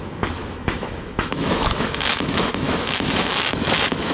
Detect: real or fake fake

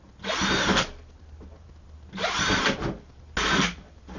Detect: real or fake real